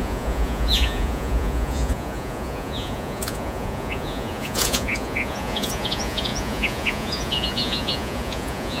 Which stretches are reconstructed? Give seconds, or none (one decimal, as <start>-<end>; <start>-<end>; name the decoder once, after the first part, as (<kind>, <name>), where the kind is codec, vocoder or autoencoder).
0.0-8.8 (vocoder, Vocos)